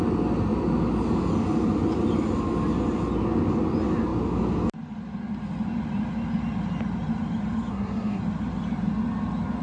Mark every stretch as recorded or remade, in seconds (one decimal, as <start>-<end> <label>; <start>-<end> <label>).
0.0-7.7 recorded; 7.7-8.2 remade; 8.2-9.6 recorded